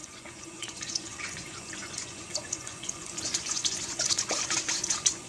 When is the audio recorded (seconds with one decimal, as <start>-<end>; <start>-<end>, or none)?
none